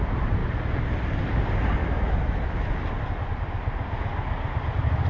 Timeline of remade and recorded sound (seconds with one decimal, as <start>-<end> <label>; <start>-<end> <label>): 0.0-1.8 recorded; 1.8-2.6 remade; 2.6-5.1 recorded